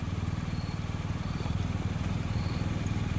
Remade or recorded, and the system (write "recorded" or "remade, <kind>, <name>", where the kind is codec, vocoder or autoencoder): remade, vocoder, BigVGAN v2